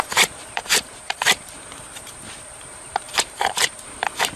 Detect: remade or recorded remade